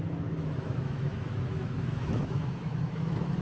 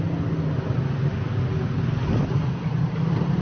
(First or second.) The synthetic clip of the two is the first